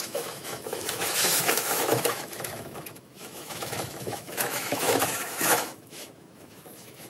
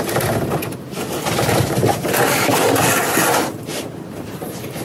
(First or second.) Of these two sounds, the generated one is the first